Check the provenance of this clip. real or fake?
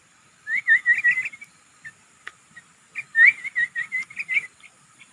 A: real